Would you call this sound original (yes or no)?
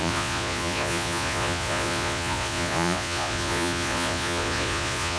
no